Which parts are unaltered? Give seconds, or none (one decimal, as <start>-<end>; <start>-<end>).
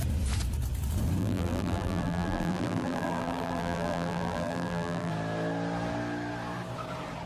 0.0-1.2; 5.1-7.3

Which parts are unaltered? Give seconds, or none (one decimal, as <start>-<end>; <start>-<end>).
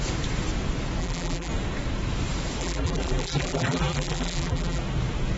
0.0-1.0; 1.5-2.6; 4.8-5.4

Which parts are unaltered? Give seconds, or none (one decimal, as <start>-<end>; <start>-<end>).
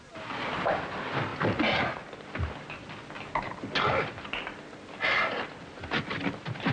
0.0-6.7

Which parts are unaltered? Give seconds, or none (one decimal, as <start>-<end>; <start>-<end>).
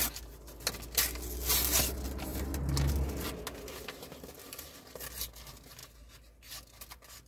0.0-7.3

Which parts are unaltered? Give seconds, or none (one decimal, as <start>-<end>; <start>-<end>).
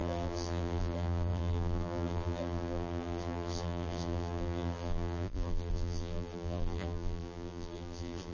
none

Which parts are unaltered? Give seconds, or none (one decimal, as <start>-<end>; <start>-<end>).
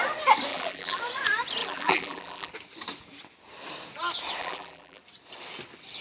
0.0-0.5; 1.0-1.6; 2.5-4.4; 5.0-6.0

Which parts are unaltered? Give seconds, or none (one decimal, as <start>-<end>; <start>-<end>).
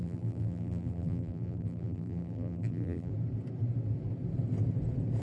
3.1-5.2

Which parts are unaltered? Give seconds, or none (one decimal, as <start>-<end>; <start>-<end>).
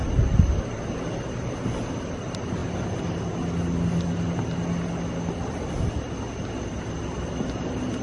0.0-8.0